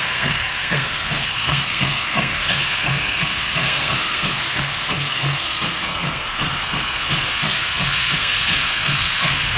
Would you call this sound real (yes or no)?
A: no